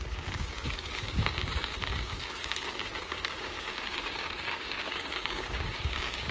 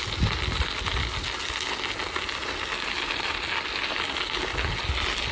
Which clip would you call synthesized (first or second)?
first